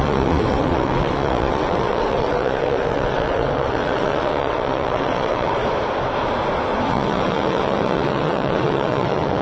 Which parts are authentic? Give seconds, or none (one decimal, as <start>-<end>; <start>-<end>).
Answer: 5.6-6.9